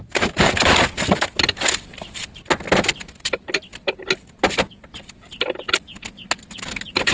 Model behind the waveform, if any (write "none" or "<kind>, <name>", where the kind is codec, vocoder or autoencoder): none